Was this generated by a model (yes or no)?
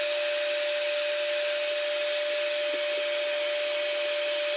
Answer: no